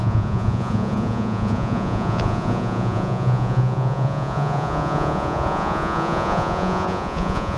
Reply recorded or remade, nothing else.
remade